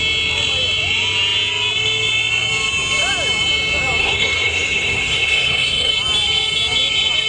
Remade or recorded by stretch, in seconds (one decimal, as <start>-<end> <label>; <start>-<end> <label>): 0.0-4.0 recorded; 4.0-5.9 remade; 5.9-7.3 recorded